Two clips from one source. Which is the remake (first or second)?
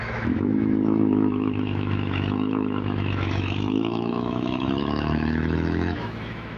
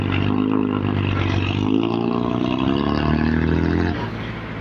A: first